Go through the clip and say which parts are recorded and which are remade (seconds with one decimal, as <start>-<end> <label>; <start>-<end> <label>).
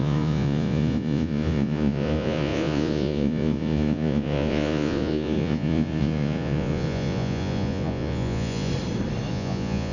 0.0-8.7 remade; 8.7-9.3 recorded; 9.3-9.9 remade